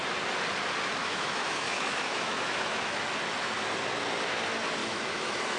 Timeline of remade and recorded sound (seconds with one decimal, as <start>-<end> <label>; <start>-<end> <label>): 0.0-1.0 recorded; 1.0-3.0 remade; 3.0-4.8 recorded; 4.8-5.6 remade